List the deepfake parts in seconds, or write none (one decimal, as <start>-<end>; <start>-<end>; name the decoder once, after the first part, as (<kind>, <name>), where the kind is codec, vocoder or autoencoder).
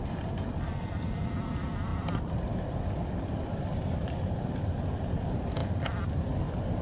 1.9-4.7 (vocoder, BigVGAN v2)